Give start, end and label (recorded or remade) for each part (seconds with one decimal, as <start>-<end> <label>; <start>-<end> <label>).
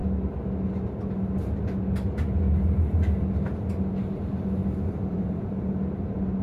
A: 0.0-4.6 recorded; 4.6-5.5 remade; 5.5-6.4 recorded